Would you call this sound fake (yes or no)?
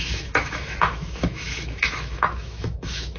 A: yes